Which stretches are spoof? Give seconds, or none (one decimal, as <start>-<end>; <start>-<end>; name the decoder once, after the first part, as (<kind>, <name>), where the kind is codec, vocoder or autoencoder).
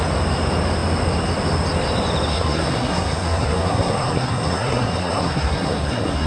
2.3-6.3 (codec, SNAC)